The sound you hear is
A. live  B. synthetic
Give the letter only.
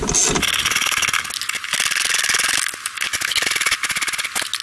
A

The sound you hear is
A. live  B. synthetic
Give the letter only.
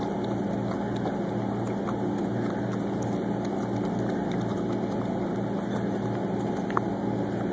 A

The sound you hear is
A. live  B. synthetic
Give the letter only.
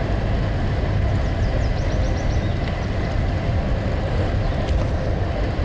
A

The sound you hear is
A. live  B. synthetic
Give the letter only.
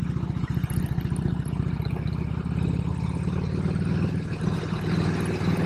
A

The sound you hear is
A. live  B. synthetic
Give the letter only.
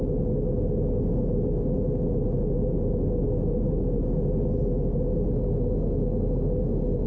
A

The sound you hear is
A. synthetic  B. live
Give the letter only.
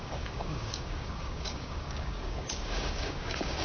A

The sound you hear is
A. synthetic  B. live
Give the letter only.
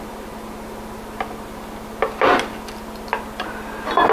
B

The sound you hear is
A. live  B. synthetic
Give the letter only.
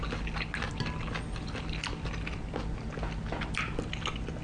A